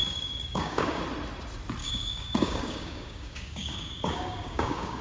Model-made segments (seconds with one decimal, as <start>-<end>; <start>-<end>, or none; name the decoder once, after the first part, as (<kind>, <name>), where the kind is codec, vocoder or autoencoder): 0.0-1.0 (codec, DAC); 1.8-5.0

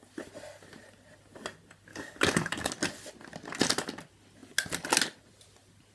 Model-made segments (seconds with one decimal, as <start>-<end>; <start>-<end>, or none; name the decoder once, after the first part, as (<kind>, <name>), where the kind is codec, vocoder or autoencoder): 1.9-2.7 (codec, DAC)

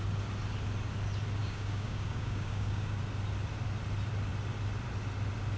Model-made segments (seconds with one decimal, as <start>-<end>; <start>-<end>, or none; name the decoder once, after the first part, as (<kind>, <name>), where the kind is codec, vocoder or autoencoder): 1.4-3.0 (codec, DAC)

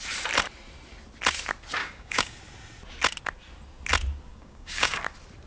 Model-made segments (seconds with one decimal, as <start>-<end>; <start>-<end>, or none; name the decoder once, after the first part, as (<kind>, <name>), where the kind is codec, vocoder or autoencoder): 1.8-2.4 (codec, DAC); 4.3-5.0

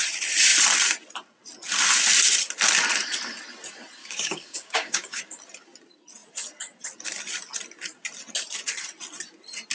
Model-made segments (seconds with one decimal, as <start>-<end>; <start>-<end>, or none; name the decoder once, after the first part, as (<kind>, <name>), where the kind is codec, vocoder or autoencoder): 4.0-5.2 (codec, DAC)